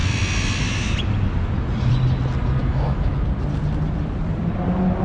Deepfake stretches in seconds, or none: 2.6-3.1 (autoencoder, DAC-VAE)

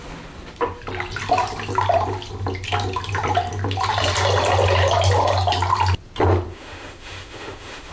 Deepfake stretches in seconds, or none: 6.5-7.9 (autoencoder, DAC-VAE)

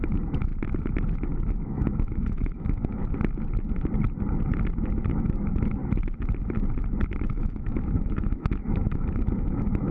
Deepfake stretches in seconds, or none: 0.0-0.5 (autoencoder, DAC-VAE); 1.5-3.0; 5.1-5.8; 7.2-9.9

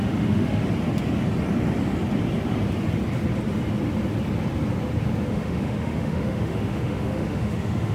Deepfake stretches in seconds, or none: 0.0-0.6 (autoencoder, DAC-VAE); 5.3-7.9

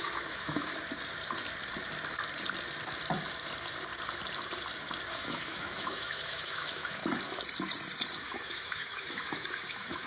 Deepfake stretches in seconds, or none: 0.0-0.7 (autoencoder, DAC-VAE); 5.1-7.0; 8.1-10.1

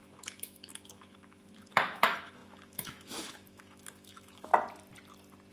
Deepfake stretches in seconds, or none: 0.0-4.5 (autoencoder, DAC-VAE)